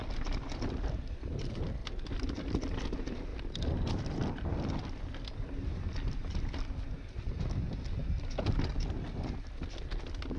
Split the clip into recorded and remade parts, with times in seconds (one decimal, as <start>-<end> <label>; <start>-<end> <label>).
0.0-0.9 remade; 0.9-1.8 recorded; 1.8-2.9 remade; 2.9-3.3 recorded; 3.3-5.0 remade; 5.0-10.4 recorded